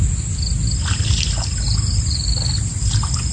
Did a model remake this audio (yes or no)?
no